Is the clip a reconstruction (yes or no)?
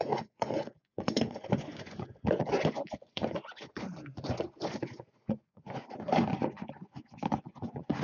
yes